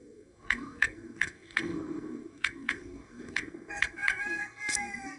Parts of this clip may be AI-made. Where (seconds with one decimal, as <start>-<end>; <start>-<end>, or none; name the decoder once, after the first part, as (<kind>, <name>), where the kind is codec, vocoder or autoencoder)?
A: 0.0-5.2 (codec, SNAC)